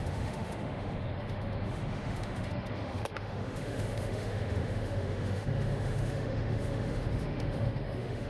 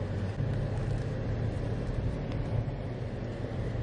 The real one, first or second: second